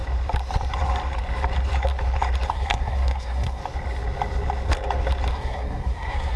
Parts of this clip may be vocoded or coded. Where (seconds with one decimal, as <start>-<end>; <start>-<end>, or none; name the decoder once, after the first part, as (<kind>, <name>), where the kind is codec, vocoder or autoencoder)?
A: 2.5-3.6 (codec, SNAC); 5.3-6.4